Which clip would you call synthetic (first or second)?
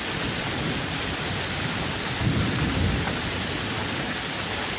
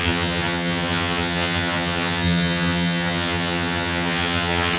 second